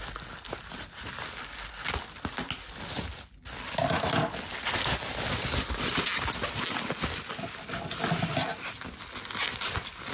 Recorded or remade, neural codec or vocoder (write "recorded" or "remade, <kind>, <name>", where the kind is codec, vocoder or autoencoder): recorded